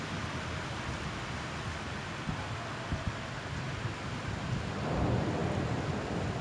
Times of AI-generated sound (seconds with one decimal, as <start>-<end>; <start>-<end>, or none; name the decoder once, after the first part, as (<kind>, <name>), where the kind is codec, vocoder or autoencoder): none

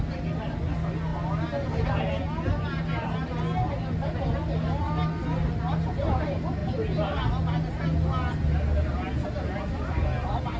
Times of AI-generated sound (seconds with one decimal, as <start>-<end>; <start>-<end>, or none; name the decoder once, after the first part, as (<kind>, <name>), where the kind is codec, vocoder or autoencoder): none